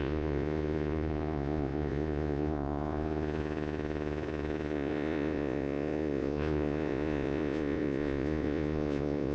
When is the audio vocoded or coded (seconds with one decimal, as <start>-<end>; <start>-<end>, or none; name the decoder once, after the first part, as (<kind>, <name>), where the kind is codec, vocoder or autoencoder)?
0.0-9.3 (vocoder, Vocos)